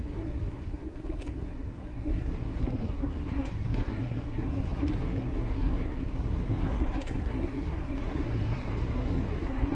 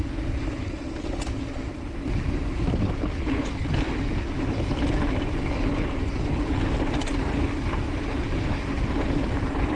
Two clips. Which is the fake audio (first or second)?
first